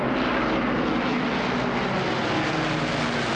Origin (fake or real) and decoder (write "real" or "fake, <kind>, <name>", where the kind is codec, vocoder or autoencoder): real